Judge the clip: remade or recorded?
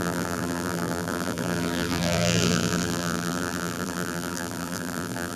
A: remade